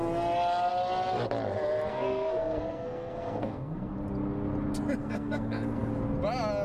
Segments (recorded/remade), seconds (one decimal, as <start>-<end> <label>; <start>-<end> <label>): 0.0-1.9 recorded; 1.9-3.9 remade; 3.9-5.0 recorded; 5.0-5.9 remade; 5.9-6.6 recorded